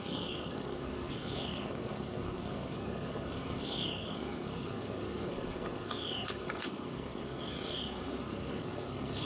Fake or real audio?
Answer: fake